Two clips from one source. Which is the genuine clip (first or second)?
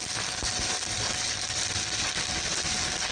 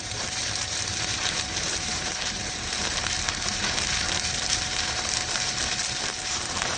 first